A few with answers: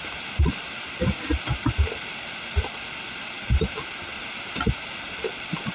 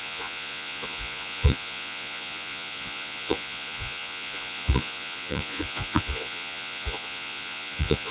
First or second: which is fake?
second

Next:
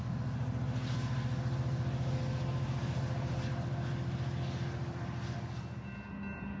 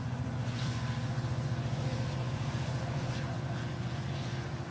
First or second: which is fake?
second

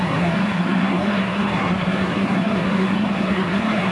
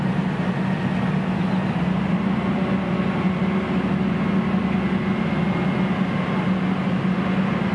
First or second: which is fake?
first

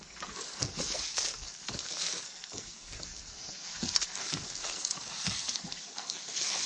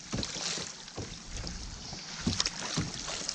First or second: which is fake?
first